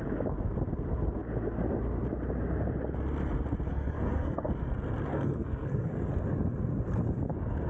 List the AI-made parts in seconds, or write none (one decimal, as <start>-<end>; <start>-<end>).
3.7-4.5; 5.1-6.1